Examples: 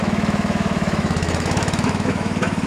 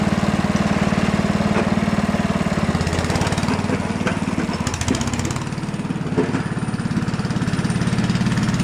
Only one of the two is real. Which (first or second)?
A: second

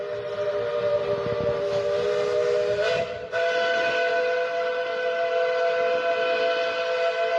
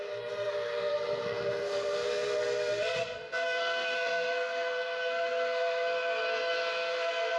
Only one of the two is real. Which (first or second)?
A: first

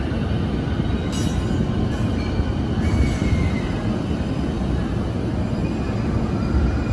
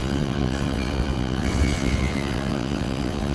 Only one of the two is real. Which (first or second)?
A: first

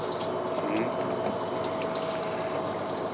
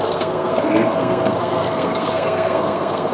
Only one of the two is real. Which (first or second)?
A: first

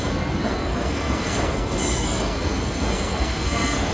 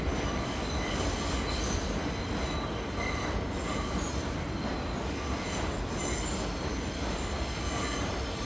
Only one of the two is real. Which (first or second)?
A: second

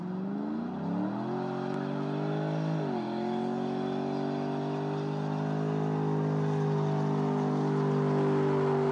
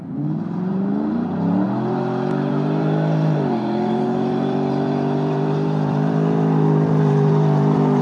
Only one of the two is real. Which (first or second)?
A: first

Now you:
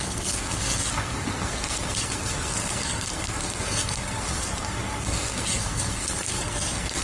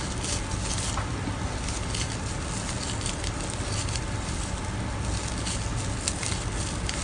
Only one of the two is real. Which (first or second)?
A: second